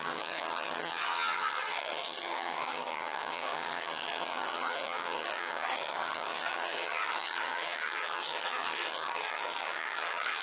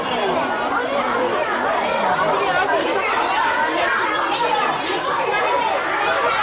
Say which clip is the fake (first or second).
first